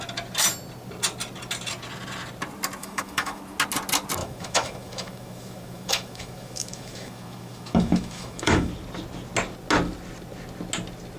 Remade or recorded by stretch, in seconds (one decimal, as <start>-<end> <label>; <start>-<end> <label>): 0.0-2.8 recorded; 2.8-3.4 remade; 3.4-4.2 recorded; 4.2-8.7 remade; 8.7-11.2 recorded